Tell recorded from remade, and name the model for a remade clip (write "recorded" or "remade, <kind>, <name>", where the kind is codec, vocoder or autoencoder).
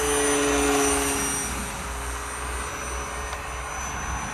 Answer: recorded